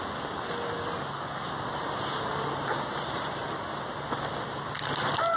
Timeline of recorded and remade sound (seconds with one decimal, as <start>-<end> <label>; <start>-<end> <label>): 0.0-5.4 recorded